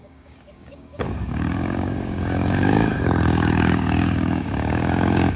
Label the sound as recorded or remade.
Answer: remade